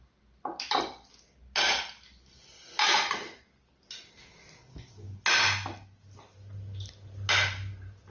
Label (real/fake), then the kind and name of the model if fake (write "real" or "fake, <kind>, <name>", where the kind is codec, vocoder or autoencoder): real